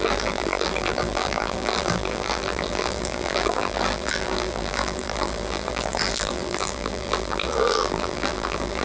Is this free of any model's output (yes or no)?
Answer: no